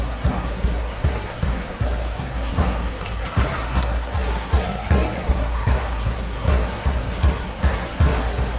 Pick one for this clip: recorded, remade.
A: remade